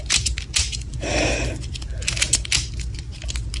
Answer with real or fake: real